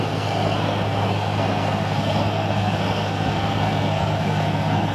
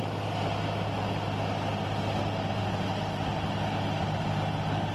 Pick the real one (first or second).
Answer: second